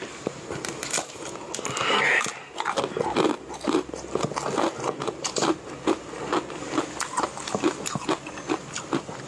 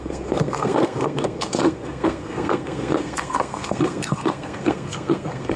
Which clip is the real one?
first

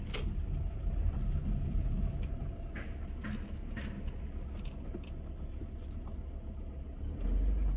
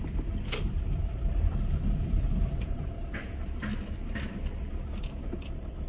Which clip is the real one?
first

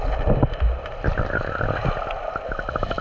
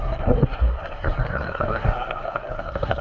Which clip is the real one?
first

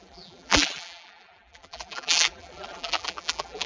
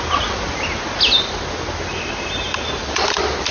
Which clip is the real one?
second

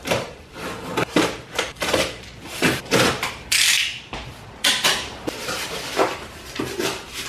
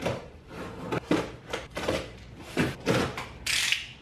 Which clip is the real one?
second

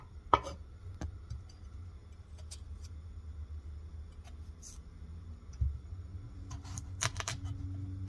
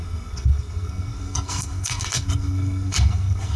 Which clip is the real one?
first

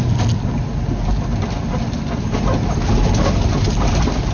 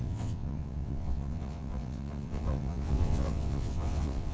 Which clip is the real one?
first